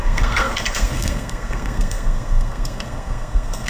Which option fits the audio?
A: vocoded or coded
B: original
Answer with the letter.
A